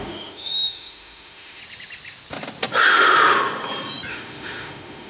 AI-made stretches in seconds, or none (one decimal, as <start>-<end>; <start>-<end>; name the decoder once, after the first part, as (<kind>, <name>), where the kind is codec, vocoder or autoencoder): 0.0-1.6 (autoencoder, DAC-VAE); 4.1-5.1

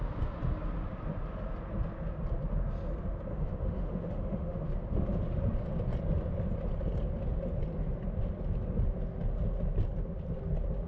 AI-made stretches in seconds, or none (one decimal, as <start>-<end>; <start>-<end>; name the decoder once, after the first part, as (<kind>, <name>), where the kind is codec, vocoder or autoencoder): 3.3-4.7 (autoencoder, DAC-VAE)

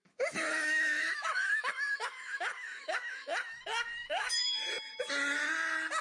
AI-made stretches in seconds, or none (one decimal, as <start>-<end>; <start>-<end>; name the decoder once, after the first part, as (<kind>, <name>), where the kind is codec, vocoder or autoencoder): 0.0-3.6 (autoencoder, DAC-VAE); 4.0-4.7

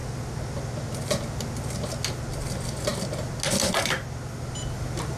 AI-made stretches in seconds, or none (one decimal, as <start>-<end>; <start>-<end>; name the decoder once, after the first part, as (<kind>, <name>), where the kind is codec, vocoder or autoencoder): none

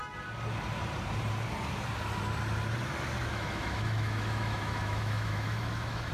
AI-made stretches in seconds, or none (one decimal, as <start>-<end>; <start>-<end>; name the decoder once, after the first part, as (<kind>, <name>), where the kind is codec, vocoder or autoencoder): 3.3-6.1 (autoencoder, DAC-VAE)

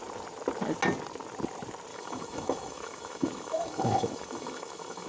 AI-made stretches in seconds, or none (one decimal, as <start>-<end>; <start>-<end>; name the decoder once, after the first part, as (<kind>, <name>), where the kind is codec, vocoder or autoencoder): 1.9-5.1 (autoencoder, DAC-VAE)

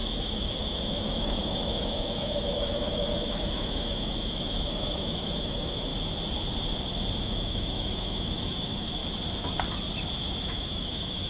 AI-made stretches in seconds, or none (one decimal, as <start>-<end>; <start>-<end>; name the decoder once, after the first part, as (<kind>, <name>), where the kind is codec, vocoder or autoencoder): 0.0-5.9 (autoencoder, DAC-VAE); 7.2-9.0; 10.4-11.3

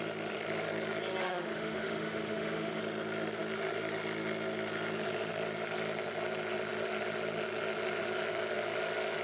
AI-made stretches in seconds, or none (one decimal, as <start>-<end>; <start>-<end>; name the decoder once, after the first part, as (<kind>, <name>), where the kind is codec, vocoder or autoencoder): 1.2-2.8 (autoencoder, DAC-VAE)